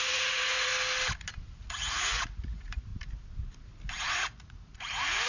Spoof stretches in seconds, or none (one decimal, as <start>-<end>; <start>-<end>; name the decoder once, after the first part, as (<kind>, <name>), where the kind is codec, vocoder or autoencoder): 0.0-0.7 (vocoder, Vocos); 1.6-2.9; 4.0-5.3

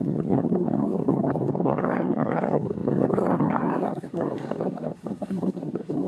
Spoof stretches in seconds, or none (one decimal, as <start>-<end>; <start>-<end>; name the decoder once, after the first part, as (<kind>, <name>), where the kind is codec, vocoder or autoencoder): 0.0-6.1 (codec, SNAC)